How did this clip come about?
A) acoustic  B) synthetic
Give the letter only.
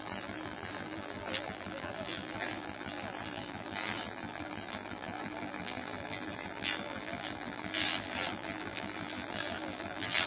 B